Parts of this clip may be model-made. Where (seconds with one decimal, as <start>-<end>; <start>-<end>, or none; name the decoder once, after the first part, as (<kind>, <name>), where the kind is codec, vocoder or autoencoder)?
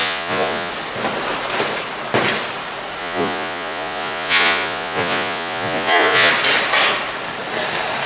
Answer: 0.0-0.7 (vocoder, Vocos); 3.0-6.3